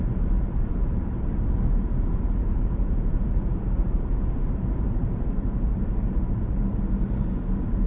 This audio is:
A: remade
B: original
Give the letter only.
A